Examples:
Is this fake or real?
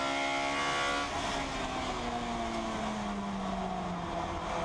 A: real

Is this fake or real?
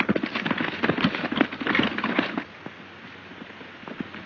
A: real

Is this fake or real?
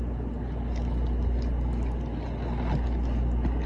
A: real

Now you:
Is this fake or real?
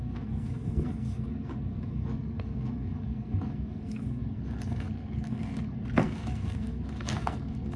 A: fake